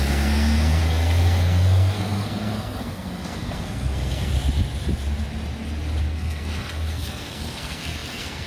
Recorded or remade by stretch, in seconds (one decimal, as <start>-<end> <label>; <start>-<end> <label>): 0.0-4.3 remade; 4.3-6.0 recorded; 6.0-8.5 remade